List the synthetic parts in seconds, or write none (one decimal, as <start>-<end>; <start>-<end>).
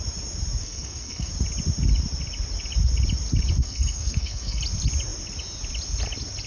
0.6-1.3; 3.6-4.6